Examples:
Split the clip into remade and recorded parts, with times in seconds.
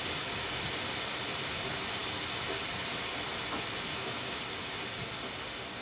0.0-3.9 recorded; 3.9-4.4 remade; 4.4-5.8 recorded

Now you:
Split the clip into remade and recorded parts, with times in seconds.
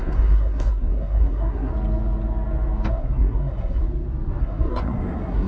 0.0-1.7 remade; 1.7-2.9 recorded; 2.9-3.8 remade; 3.8-4.4 recorded; 4.4-5.5 remade